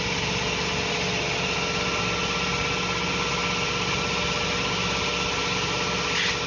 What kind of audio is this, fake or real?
real